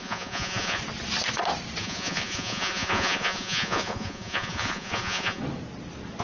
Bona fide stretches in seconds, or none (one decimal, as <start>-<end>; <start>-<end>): 0.8-1.8; 5.4-6.2